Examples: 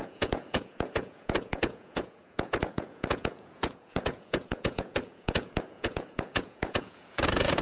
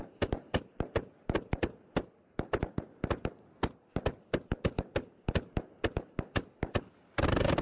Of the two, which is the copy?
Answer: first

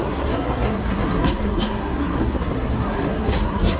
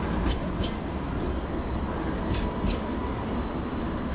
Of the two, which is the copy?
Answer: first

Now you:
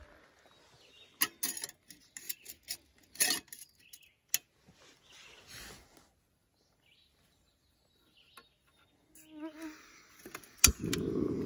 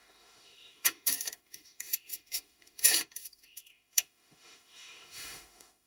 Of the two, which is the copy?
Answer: second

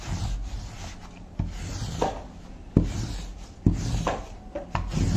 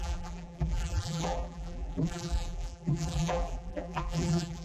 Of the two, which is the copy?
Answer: second